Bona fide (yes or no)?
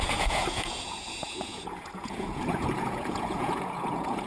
no